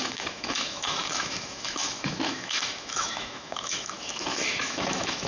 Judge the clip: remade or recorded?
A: remade